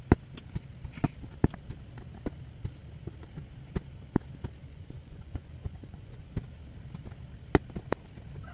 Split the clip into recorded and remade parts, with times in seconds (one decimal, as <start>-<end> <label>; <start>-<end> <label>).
0.0-4.6 recorded; 4.6-6.3 remade; 6.3-8.5 recorded